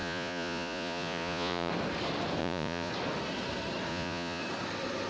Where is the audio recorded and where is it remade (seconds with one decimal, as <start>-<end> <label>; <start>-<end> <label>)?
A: 0.0-1.7 remade; 1.7-2.4 recorded; 2.4-2.9 remade; 2.9-3.9 recorded; 3.9-4.4 remade; 4.4-5.1 recorded